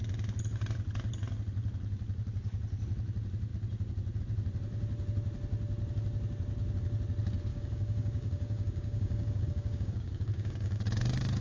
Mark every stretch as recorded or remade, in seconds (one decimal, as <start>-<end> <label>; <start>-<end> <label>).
0.0-7.5 recorded; 7.5-11.4 remade